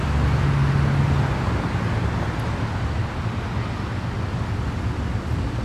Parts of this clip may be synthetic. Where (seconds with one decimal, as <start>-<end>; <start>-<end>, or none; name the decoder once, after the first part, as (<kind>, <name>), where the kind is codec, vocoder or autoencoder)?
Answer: none